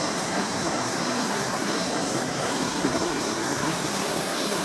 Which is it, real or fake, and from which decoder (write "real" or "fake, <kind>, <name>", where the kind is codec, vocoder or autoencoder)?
fake, codec, SNAC